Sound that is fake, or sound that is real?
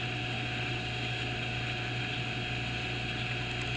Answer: real